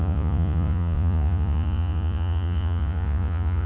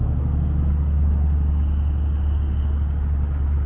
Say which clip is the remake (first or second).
first